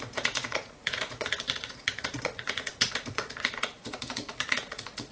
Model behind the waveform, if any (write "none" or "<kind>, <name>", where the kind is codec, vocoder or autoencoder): vocoder, Vocos